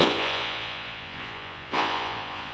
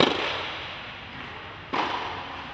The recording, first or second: second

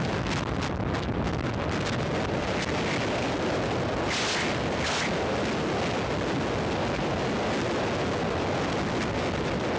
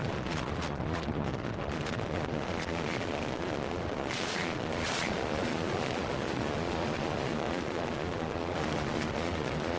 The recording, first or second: first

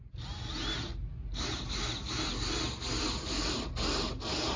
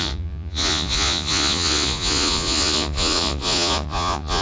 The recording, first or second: first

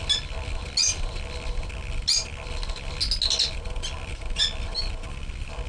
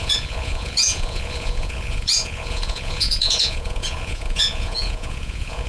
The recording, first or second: first